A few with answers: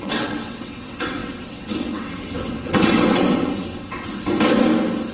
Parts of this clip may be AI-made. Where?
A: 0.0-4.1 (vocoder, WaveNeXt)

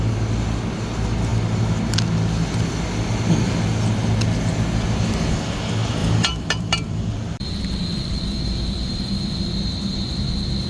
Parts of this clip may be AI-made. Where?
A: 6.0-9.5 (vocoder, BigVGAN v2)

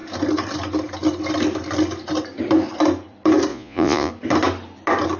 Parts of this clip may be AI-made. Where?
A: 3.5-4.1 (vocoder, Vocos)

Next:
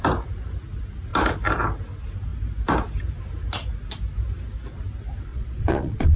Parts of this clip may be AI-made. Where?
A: 5.3-6.2 (vocoder, Vocos)

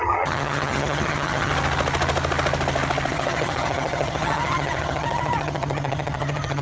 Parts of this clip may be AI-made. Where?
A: 0.0-1.5 (vocoder, HiFi-GAN); 3.1-6.6

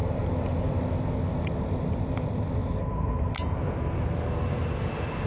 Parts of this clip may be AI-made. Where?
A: none